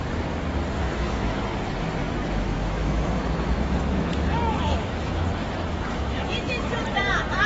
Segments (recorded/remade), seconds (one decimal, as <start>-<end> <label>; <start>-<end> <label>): 0.0-0.8 recorded; 0.8-1.4 remade; 1.4-2.5 recorded; 2.5-6.7 remade; 6.7-7.5 recorded